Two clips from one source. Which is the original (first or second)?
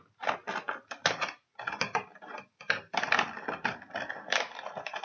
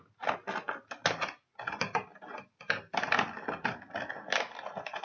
second